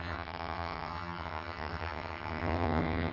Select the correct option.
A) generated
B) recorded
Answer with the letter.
A